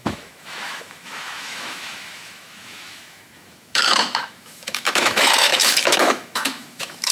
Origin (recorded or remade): remade